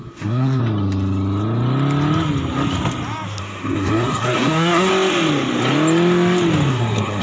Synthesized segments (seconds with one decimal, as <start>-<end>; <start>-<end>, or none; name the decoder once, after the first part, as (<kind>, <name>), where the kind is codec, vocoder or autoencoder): 0.0-0.6 (codec, SNAC); 3.4-4.9; 6.7-7.2